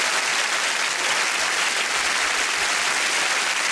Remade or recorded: recorded